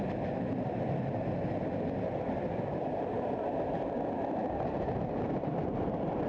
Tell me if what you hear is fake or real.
real